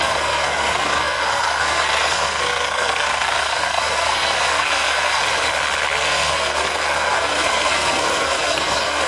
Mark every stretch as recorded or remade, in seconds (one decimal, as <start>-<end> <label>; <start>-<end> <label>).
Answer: 0.0-5.2 remade; 5.2-6.0 recorded; 6.0-9.1 remade